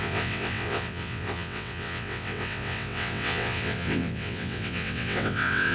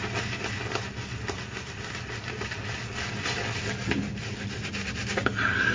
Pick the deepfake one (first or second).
first